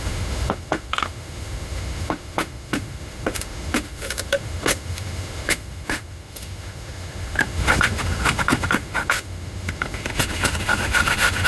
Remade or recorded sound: remade